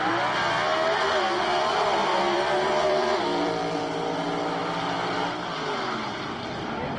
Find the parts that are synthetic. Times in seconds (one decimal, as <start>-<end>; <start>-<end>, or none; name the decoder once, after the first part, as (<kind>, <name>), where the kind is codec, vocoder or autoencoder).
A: 2.1-3.5 (vocoder, BigVGAN v2)